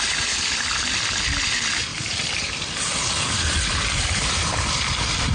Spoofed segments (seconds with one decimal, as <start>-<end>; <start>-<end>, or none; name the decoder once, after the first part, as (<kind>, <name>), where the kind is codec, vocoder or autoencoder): 1.9-5.3 (vocoder, BigVGAN v2)